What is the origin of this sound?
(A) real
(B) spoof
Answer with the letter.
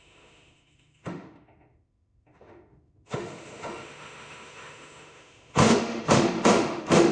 B